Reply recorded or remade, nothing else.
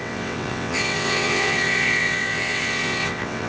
remade